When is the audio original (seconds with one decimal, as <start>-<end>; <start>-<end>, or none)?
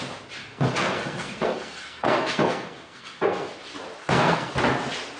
0.0-0.4; 3.5-4.0; 4.5-5.2